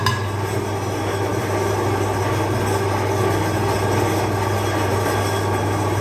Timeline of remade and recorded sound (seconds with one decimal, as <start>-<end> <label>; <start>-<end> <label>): 0.0-6.0 recorded